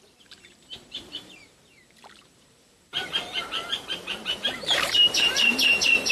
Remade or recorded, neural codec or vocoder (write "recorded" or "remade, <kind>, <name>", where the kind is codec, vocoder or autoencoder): remade, vocoder, BigVGAN v2